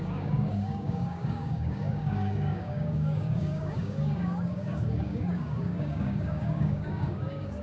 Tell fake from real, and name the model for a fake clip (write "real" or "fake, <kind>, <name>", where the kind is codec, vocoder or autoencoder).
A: fake, codec, DAC